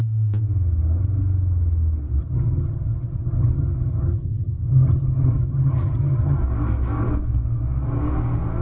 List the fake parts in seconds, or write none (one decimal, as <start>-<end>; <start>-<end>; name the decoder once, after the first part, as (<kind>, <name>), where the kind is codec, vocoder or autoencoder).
2.2-6.4 (vocoder, HiFi-GAN)